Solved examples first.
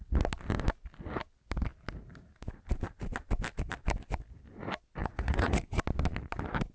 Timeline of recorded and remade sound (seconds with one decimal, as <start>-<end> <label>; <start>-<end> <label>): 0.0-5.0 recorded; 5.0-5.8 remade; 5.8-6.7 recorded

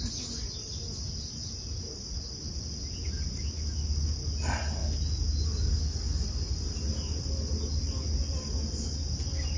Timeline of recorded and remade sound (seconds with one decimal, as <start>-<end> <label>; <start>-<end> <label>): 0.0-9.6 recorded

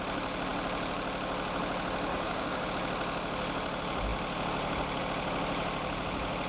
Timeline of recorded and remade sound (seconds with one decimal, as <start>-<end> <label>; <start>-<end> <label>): 0.0-2.1 recorded; 2.1-2.7 remade; 2.7-6.5 recorded